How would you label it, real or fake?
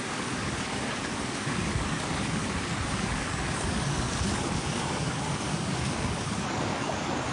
fake